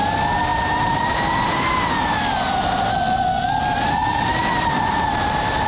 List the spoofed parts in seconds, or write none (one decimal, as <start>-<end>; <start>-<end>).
none